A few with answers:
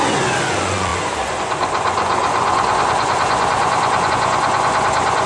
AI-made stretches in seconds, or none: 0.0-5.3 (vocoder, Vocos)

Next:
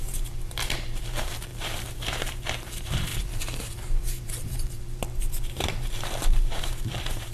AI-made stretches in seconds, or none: 0.0-7.3 (vocoder, BigVGAN v2)

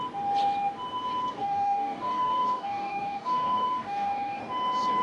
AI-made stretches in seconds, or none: 1.4-4.4 (codec, DAC)